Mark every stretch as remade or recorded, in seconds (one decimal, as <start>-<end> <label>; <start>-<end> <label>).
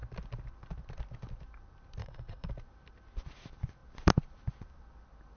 0.0-2.0 recorded; 2.0-2.5 remade; 2.5-5.4 recorded